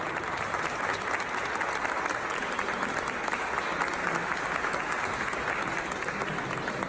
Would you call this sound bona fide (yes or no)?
yes